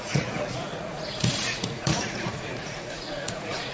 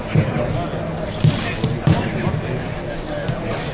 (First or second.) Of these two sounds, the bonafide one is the second